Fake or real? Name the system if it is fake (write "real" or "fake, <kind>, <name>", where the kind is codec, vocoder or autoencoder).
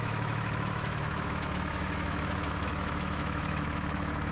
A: fake, autoencoder, DAC-VAE